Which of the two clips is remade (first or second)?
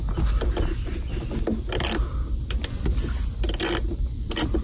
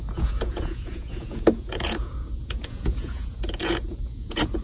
second